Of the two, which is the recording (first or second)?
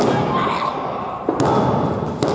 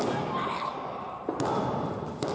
first